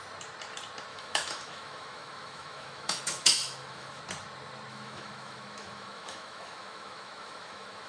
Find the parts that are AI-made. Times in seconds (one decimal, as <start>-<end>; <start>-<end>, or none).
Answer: 0.9-4.0; 4.7-7.9